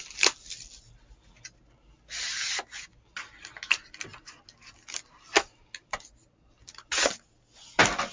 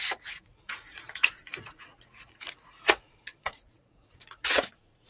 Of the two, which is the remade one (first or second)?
second